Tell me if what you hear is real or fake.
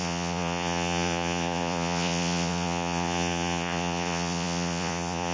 fake